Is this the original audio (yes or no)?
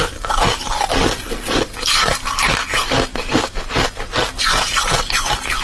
yes